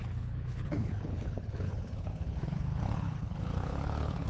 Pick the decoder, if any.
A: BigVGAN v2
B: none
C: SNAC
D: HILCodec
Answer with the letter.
D